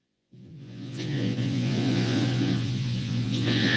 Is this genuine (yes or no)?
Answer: no